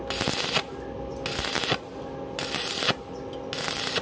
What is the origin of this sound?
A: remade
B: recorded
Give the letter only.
B